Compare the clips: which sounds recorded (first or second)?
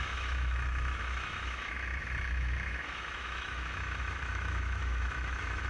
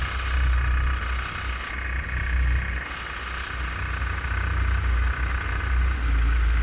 second